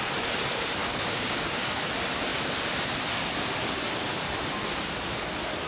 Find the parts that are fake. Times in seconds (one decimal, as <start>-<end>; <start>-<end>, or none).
0.8-1.8